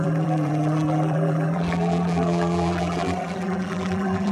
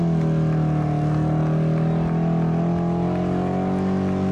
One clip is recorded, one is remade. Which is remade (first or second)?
first